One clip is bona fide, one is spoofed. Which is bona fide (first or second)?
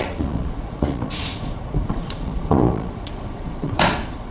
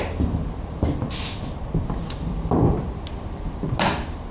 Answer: second